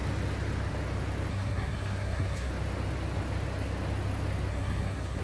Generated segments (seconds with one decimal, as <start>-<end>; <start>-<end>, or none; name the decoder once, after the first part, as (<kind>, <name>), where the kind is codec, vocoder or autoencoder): 1.3-2.5 (codec, SNAC); 4.5-5.2